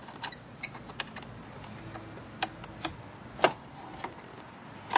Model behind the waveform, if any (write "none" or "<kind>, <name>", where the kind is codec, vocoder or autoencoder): none